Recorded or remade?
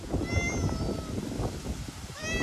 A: recorded